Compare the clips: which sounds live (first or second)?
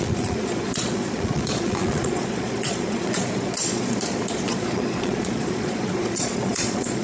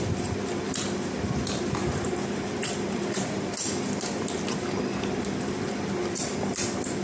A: second